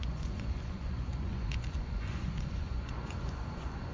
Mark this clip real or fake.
fake